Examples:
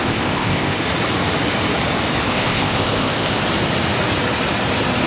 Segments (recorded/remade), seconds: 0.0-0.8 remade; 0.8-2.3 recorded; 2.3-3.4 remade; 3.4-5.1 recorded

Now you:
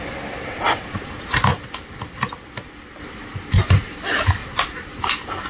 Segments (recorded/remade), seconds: 0.0-5.5 recorded